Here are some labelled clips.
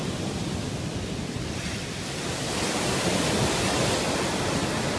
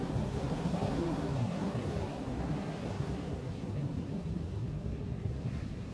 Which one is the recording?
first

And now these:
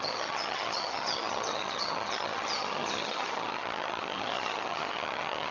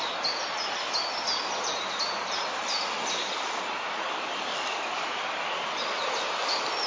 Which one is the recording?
second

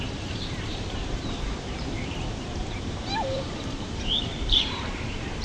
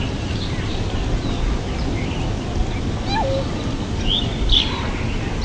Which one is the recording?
second